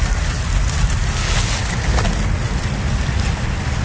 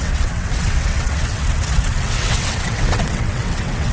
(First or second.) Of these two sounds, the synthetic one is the second